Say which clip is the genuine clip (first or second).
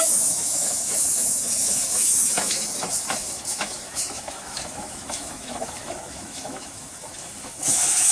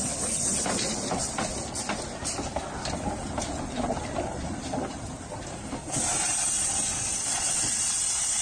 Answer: second